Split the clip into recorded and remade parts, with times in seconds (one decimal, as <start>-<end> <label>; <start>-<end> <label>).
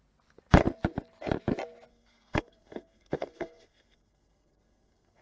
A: 0.0-1.9 recorded; 1.9-5.2 remade